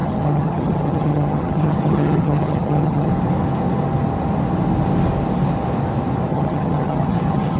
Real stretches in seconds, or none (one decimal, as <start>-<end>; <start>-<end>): 3.1-6.3